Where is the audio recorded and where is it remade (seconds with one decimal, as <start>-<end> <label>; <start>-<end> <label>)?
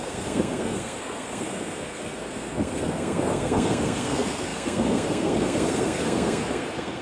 0.0-7.0 remade